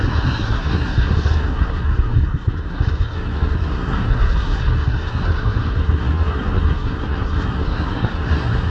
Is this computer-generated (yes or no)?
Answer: yes